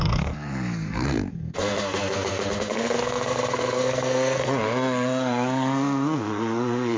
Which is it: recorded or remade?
remade